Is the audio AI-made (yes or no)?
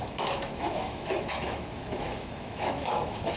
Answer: yes